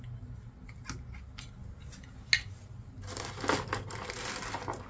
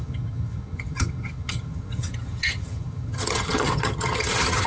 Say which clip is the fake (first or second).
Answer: second